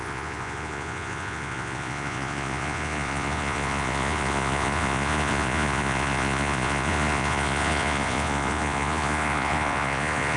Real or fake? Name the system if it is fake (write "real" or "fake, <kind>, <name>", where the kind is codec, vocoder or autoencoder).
fake, vocoder, Vocos